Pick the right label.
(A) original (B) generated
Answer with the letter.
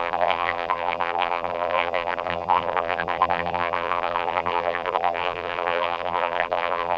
B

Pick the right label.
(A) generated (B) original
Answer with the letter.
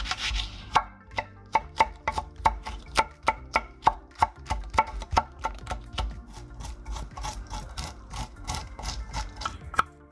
A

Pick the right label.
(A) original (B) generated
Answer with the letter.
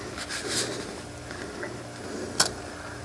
A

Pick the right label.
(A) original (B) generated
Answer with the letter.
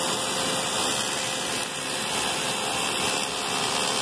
A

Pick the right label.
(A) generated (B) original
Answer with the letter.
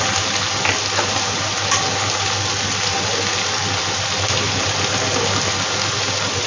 B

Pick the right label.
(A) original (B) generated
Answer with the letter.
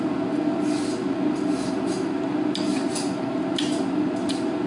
A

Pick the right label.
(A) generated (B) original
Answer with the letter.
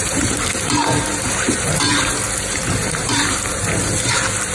A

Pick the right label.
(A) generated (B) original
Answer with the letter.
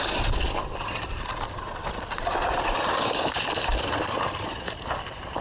A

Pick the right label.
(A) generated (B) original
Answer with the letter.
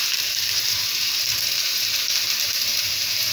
A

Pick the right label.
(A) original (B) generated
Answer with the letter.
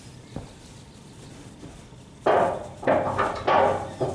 A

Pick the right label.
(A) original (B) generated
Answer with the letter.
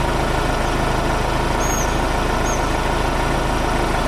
A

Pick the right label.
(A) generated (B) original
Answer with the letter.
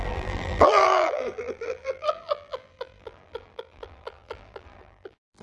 A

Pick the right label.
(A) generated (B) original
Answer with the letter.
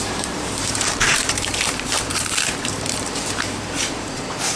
A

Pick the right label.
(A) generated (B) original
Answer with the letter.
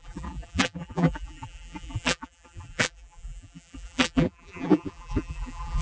A